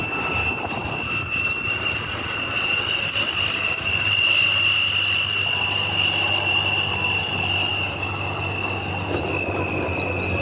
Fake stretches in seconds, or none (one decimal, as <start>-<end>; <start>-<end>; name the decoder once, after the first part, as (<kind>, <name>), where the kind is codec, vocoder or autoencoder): none